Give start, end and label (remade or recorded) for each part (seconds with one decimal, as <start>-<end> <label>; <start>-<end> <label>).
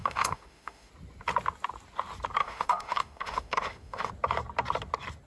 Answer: 0.0-0.9 remade; 0.9-2.4 recorded; 2.4-4.1 remade; 4.1-5.3 recorded